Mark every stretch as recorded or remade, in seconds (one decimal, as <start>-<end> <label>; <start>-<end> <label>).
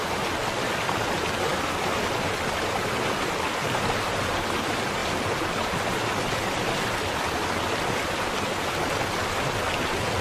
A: 0.0-3.6 recorded; 3.6-4.5 remade; 4.5-10.2 recorded